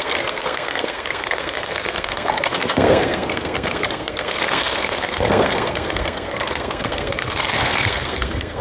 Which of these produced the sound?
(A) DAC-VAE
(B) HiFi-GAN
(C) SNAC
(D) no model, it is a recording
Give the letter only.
C